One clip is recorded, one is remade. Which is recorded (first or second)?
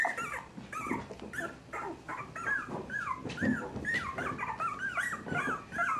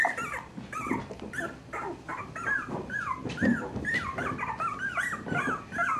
first